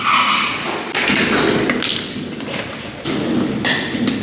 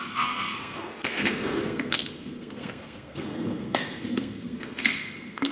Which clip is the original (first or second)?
first